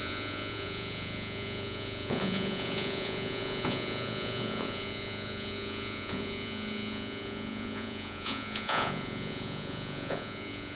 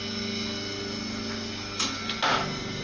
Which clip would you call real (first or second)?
second